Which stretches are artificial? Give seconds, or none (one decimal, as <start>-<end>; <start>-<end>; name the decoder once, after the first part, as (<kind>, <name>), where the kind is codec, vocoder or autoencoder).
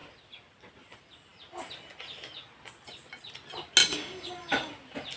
3.8-4.7 (codec, DAC)